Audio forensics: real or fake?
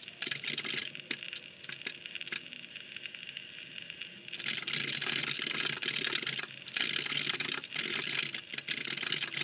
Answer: real